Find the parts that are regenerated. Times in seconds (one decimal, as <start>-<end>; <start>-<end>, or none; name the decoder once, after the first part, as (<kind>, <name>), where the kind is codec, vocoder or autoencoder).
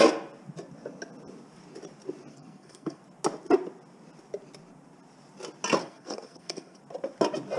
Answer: 2.3-3.0 (codec, SNAC); 5.8-6.8